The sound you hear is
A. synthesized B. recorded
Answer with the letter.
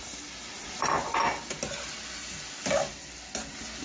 B